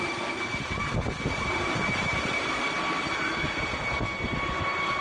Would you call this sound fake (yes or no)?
no